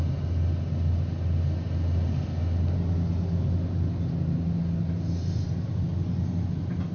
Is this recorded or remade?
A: recorded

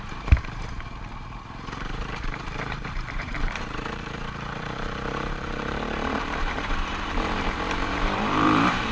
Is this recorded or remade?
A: remade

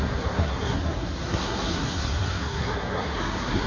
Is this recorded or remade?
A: remade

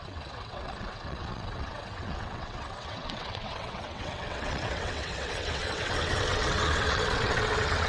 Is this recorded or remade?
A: remade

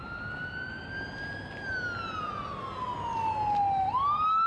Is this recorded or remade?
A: recorded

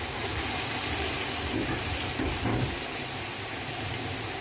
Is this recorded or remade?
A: remade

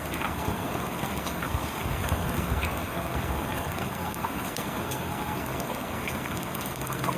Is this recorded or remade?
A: remade